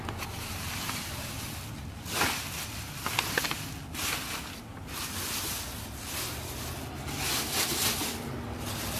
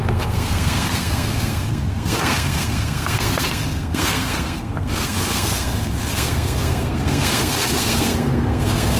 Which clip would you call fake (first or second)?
second